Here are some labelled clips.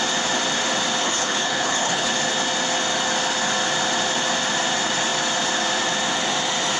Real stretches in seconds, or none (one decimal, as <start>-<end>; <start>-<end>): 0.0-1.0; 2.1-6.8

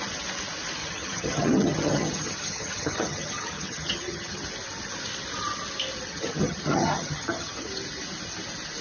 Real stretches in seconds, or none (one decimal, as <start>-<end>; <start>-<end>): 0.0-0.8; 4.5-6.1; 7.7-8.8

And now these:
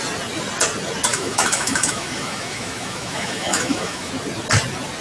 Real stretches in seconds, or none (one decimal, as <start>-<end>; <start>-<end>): 0.0-1.1; 4.1-5.0

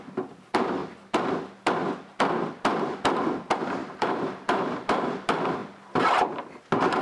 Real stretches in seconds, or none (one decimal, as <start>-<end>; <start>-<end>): 0.0-0.8; 1.3-3.8; 5.0-5.6; 6.5-7.0

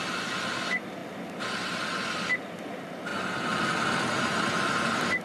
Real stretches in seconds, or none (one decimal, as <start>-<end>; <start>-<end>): 0.0-5.2

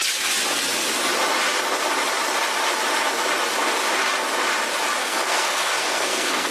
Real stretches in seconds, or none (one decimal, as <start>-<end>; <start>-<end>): 0.0-5.0

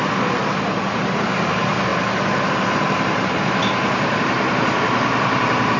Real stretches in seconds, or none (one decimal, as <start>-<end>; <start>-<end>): 1.9-2.5